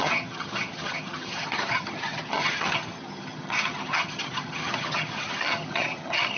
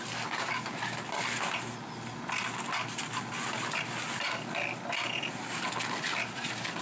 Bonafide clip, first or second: second